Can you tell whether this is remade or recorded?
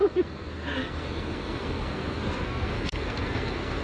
remade